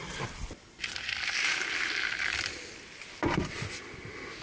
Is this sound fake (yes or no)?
no